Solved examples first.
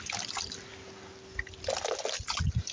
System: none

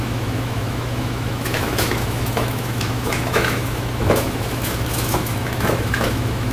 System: autoencoder, DAC-VAE